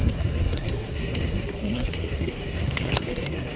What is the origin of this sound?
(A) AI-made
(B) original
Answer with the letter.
A